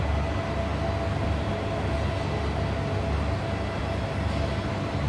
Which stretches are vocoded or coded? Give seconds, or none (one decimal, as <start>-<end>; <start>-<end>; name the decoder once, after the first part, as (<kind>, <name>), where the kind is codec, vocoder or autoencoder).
none